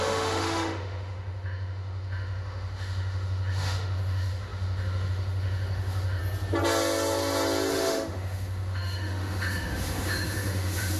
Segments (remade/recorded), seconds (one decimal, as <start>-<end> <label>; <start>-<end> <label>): 0.0-6.2 remade; 6.2-7.7 recorded; 7.7-11.0 remade